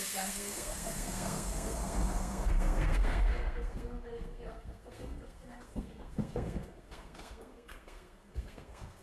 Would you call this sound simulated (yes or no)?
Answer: yes